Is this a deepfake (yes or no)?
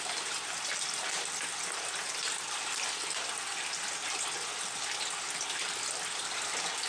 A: no